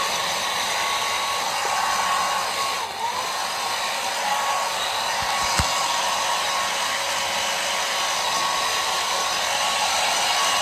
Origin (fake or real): real